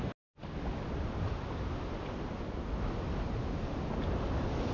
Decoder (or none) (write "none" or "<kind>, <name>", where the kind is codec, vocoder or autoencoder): none